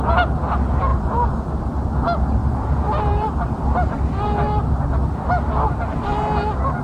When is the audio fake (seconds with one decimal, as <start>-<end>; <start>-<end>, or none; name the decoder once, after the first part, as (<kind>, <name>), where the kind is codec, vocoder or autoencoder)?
0.9-1.5 (vocoder, BigVGAN v2); 2.4-3.6